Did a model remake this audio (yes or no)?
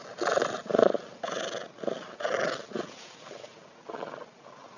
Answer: no